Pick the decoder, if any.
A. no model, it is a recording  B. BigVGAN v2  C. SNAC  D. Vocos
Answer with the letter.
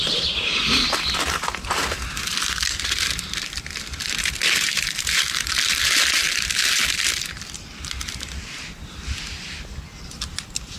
A